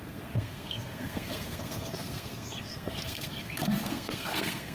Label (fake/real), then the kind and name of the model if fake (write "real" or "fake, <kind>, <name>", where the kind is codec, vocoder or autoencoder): fake, codec, SNAC